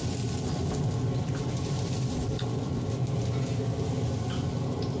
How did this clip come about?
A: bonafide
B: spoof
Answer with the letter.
A